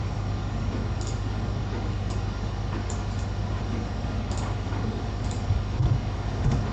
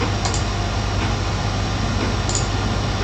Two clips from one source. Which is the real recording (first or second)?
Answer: second